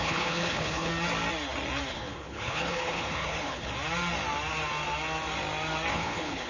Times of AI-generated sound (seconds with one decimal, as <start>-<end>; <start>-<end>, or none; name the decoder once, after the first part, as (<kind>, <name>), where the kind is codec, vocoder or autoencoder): 0.0-0.9 (codec, HILCodec); 1.9-3.7; 5.9-6.5